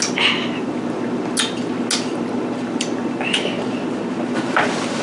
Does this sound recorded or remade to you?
recorded